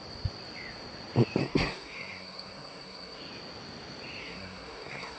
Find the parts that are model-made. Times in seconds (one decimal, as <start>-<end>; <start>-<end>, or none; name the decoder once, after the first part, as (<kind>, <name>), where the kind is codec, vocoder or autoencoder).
1.4-3.2 (codec, SNAC); 4.2-5.2